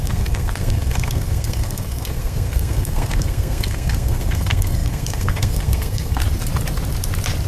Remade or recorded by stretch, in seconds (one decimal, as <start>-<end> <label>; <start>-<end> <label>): 0.0-6.2 remade; 6.2-7.5 recorded